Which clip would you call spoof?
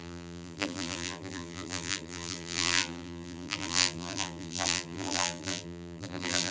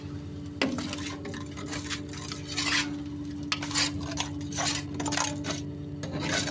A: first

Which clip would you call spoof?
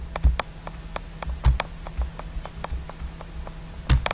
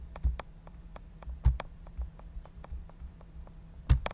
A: second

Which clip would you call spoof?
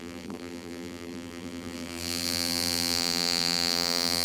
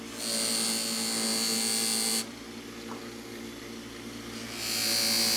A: first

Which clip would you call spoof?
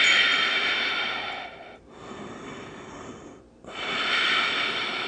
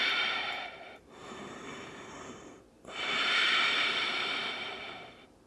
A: second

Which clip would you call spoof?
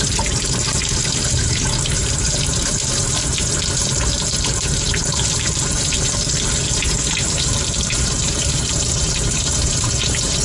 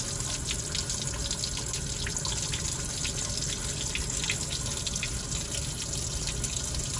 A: first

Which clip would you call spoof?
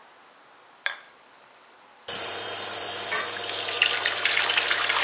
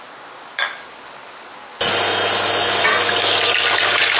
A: first